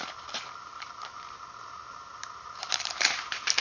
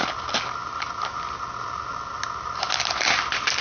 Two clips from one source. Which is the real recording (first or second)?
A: second